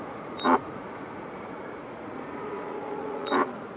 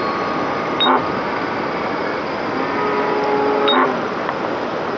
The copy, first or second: first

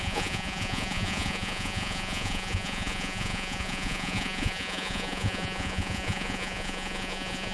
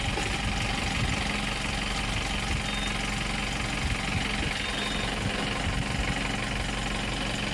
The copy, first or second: first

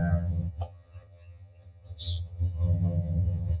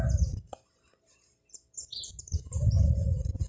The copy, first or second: first